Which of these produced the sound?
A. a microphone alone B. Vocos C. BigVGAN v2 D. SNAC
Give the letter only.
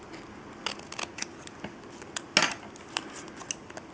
A